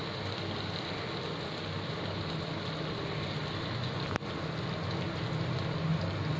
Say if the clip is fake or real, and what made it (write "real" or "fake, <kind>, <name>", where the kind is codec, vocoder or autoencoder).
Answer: real